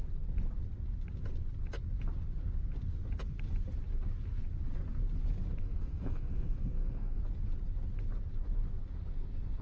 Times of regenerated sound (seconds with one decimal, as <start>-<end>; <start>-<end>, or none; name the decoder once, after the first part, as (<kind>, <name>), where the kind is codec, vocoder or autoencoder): 5.6-7.2 (codec, SNAC)